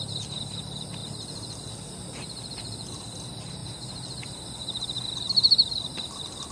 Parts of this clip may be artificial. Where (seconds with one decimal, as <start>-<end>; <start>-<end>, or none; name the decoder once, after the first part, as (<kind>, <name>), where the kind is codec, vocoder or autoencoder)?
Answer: none